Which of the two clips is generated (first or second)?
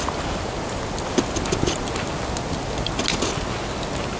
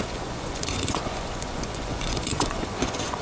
second